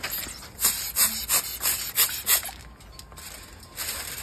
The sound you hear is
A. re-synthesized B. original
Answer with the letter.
B